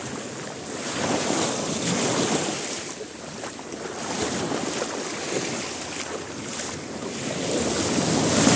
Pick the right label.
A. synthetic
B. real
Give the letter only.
B